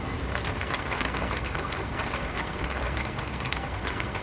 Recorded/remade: remade